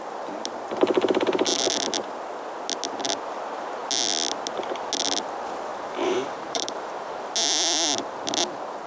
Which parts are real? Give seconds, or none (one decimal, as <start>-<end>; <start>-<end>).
0.0-5.7; 7.3-8.9